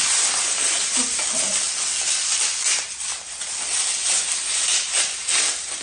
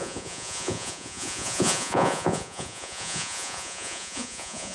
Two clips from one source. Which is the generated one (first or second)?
second